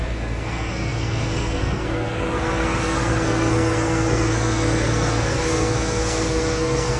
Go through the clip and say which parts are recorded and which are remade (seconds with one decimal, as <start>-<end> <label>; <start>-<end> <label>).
0.0-7.0 remade